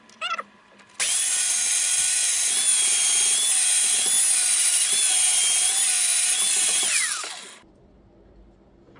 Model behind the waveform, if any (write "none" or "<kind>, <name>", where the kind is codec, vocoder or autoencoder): none